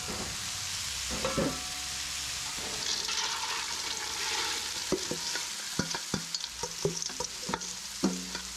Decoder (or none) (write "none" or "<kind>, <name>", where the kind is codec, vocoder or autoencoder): none